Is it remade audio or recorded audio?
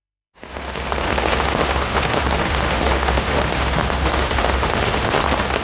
remade